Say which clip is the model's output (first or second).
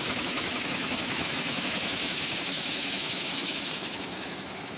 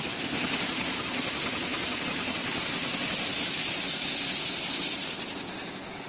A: first